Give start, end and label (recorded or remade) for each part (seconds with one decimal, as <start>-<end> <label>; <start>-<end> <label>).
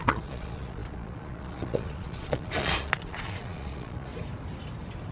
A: 0.0-4.1 remade; 4.1-5.1 recorded